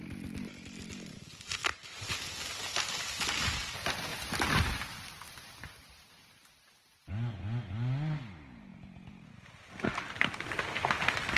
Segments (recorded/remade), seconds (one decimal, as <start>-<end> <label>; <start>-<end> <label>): 0.0-11.4 recorded